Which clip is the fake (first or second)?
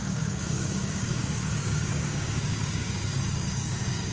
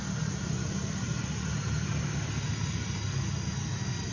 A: first